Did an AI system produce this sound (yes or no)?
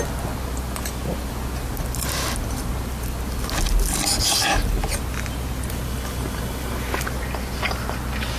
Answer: no